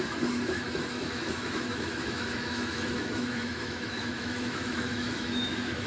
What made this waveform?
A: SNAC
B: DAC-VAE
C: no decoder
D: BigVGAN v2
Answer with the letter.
B